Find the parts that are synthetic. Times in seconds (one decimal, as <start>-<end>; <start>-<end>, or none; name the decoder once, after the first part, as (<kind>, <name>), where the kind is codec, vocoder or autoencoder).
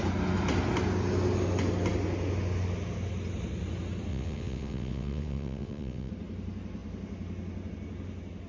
4.1-6.1 (vocoder, WaveNeXt)